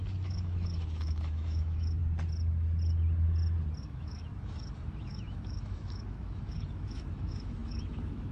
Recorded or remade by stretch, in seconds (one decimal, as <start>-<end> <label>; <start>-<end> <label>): 0.0-2.0 remade; 2.0-3.8 recorded; 3.8-8.3 remade